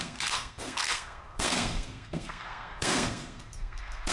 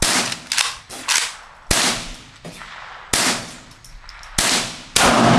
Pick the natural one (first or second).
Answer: second